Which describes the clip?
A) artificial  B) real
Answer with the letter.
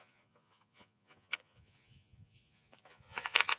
A